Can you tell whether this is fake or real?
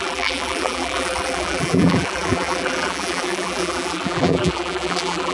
fake